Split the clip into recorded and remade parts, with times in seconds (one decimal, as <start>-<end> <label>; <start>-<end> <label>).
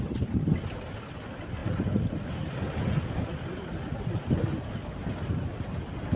0.0-6.2 recorded